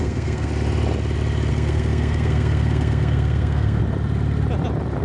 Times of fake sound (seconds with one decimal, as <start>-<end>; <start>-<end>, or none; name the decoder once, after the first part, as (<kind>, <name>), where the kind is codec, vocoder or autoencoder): 0.0-0.5 (codec, SNAC); 1.5-3.8